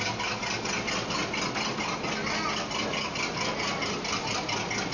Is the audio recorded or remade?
recorded